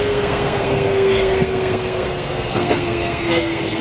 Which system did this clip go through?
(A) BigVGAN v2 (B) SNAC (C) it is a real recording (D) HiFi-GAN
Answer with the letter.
B